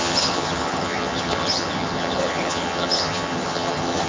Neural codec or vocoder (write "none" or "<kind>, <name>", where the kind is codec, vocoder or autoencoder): vocoder, HiFi-GAN